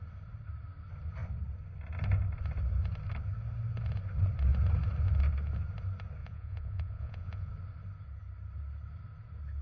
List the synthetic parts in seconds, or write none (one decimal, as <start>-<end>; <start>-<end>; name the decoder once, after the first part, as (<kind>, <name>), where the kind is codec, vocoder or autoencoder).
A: 6.2-7.5 (vocoder, Vocos)